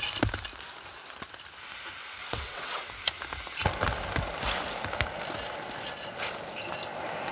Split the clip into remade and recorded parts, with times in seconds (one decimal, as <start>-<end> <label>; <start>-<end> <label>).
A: 0.0-2.2 recorded; 2.2-2.9 remade; 2.9-7.3 recorded